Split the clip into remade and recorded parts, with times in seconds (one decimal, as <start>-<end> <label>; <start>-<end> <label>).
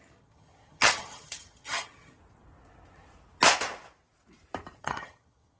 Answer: 0.0-2.2 remade; 2.2-4.8 recorded; 4.8-5.6 remade